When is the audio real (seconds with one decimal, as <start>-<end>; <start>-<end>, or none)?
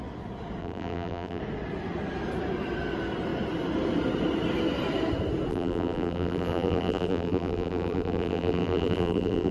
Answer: 0.0-0.6; 1.4-5.5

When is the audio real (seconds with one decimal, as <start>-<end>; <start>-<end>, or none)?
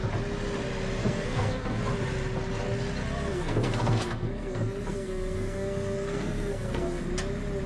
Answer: 0.0-1.0; 1.8-3.3; 7.0-7.7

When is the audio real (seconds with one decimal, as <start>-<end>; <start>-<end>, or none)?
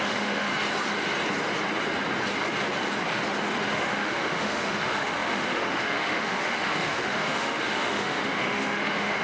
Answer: 0.5-3.7